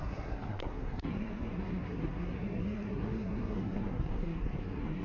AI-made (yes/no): yes